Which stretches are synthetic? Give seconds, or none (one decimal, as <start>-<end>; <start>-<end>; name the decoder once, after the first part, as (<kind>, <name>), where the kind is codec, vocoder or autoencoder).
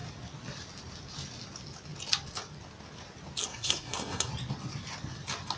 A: 3.5-4.3 (codec, SNAC)